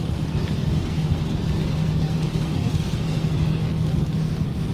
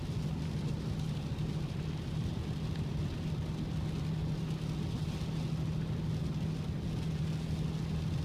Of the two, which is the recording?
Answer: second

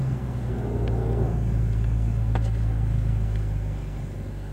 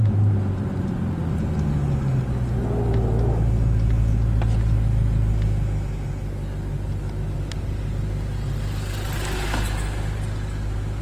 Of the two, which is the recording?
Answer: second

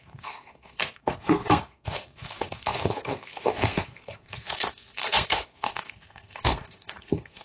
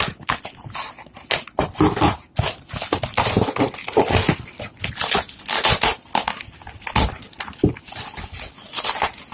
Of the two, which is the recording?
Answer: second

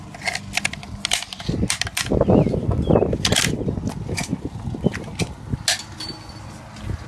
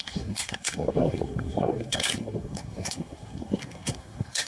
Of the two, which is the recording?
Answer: first